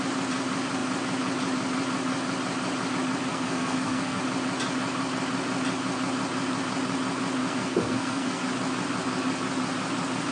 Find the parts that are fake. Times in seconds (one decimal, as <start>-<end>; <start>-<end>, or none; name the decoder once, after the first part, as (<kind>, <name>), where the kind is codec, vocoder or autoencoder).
3.3-4.2 (codec, SNAC); 7.4-8.5